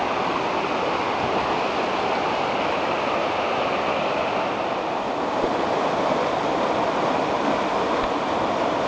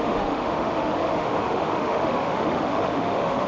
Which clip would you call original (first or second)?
first